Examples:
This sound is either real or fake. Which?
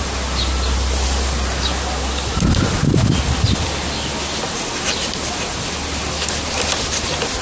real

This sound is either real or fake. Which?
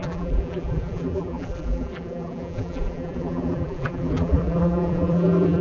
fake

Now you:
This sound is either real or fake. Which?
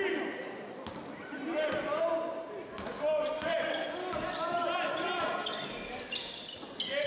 real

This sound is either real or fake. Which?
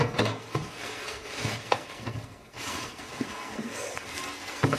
fake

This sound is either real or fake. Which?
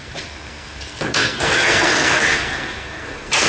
fake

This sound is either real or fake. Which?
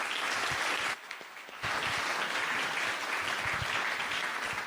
real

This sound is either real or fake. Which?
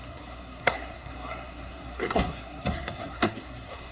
fake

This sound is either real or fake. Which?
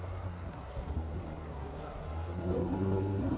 fake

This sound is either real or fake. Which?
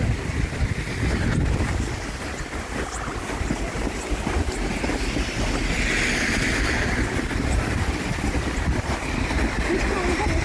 real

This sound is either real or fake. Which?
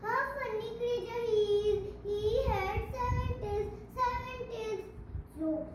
real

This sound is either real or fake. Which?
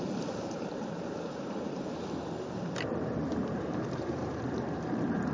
fake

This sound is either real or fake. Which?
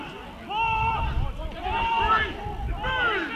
real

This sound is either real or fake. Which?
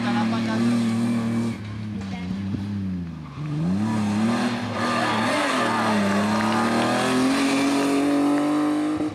real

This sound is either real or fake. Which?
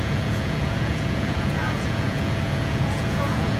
fake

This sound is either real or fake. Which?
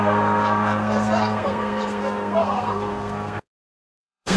fake